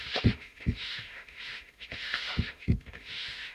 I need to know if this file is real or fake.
fake